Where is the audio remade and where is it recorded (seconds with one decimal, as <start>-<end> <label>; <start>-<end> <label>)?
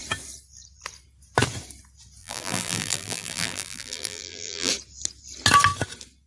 0.0-2.2 recorded; 2.2-4.7 remade; 4.7-6.3 recorded